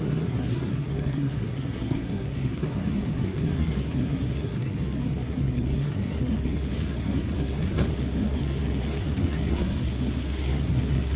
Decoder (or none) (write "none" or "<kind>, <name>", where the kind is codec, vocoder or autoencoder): codec, SNAC